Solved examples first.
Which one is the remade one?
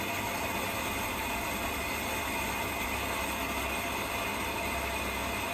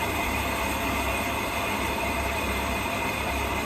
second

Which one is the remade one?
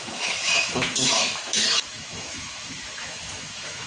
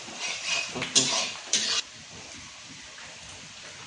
first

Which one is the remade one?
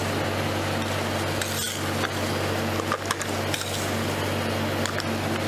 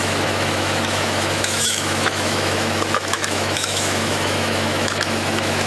second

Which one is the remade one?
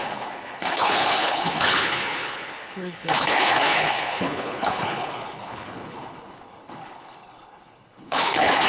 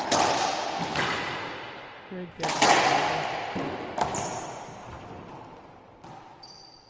first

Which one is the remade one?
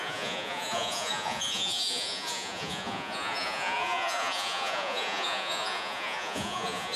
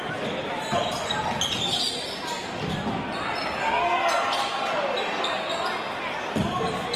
first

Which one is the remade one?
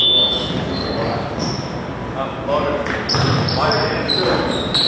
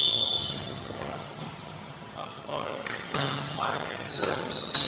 second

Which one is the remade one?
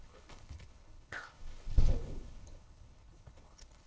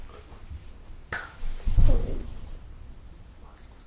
first